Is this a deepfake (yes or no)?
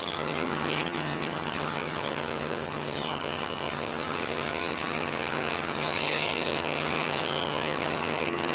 yes